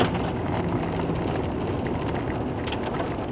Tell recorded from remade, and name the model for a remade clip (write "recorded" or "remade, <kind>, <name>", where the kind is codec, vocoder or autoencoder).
recorded